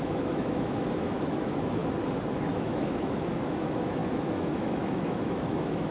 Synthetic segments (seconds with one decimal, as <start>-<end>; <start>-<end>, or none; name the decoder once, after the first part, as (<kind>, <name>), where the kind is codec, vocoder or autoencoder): 0.0-1.8 (autoencoder, DAC-VAE); 2.5-5.9